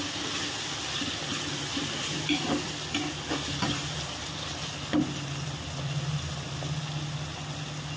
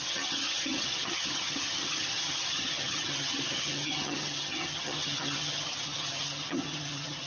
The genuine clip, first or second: first